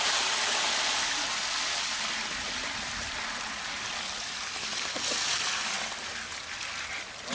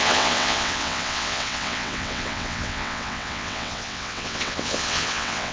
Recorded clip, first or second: first